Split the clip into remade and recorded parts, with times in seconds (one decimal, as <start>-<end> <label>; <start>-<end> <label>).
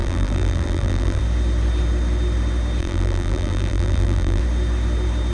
0.0-1.2 remade; 1.2-2.8 recorded; 2.8-4.4 remade; 4.4-5.3 recorded